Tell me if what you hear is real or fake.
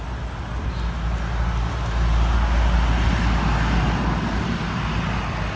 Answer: real